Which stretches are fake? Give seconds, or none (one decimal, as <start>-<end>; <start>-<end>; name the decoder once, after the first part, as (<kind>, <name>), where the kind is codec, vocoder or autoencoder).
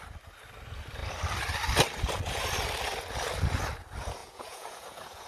4.2-5.3 (vocoder, Vocos)